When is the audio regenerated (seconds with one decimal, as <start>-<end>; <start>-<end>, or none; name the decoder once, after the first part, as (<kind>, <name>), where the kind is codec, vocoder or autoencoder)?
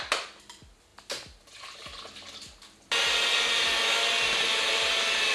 none